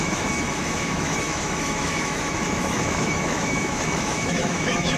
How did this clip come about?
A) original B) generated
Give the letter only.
B